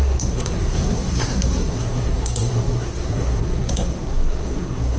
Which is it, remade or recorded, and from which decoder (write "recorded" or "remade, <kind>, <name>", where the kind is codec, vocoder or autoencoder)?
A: remade, codec, SNAC